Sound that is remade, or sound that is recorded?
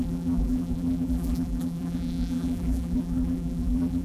remade